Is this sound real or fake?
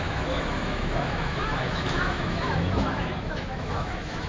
fake